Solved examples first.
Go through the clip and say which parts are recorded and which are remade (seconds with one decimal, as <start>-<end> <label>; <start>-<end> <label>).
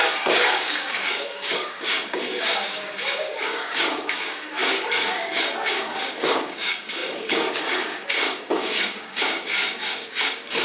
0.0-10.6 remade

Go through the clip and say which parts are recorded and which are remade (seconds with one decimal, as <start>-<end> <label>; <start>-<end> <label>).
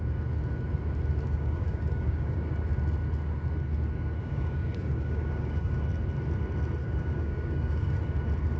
0.0-1.2 recorded; 1.2-2.5 remade; 2.5-4.2 recorded; 4.2-5.8 remade; 5.8-6.8 recorded; 6.8-8.0 remade; 8.0-8.6 recorded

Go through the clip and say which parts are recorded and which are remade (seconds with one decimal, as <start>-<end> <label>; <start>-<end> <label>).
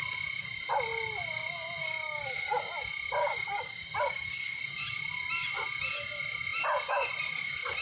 0.0-1.8 recorded; 1.8-2.6 remade; 2.6-3.2 recorded; 3.2-4.6 remade; 4.6-7.8 recorded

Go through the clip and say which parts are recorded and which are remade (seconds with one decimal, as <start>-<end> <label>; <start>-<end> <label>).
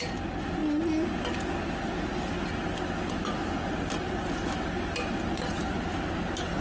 0.0-6.6 recorded